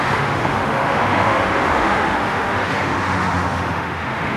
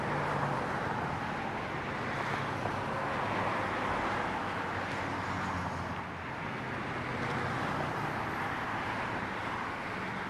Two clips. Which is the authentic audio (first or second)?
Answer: second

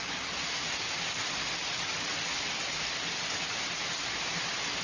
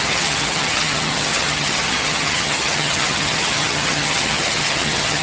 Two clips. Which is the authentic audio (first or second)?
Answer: first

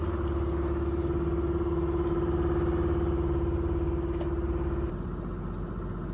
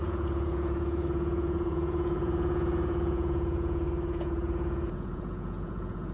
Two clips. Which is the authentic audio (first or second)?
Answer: first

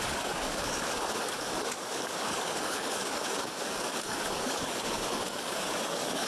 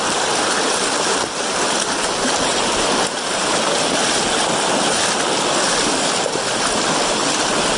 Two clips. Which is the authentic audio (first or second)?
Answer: second